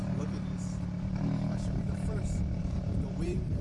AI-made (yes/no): yes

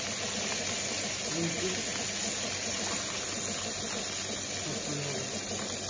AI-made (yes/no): no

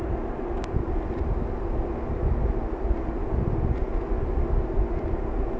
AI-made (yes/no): no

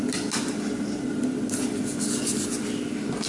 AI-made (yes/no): no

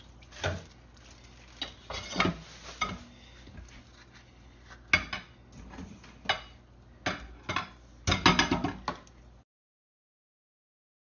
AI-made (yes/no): no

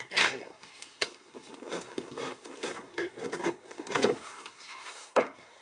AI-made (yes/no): yes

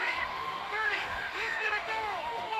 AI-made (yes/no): yes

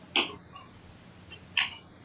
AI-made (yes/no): no